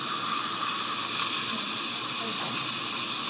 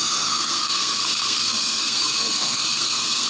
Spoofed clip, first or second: second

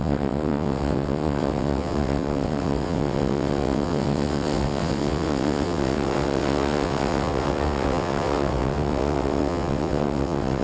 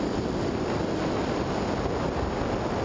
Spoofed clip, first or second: first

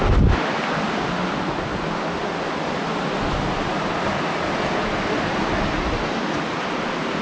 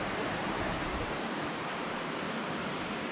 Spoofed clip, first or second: second